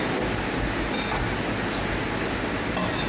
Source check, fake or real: real